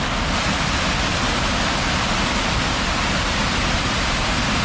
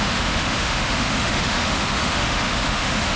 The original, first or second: first